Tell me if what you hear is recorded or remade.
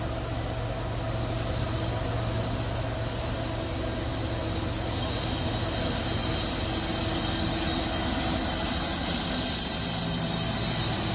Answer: recorded